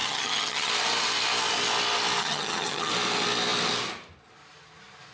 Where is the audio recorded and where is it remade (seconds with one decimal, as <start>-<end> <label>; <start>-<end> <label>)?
0.0-0.7 remade; 0.7-2.2 recorded; 2.2-2.9 remade; 2.9-5.1 recorded